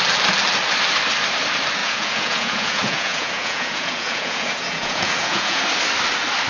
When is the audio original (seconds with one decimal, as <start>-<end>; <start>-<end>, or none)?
0.0-1.8; 5.6-6.5